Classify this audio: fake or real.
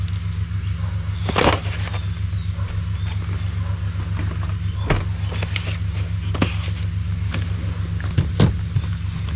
real